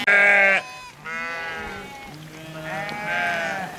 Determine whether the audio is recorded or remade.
recorded